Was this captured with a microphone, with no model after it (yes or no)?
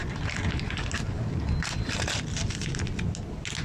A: yes